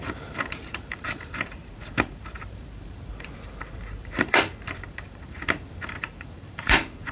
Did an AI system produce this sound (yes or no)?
yes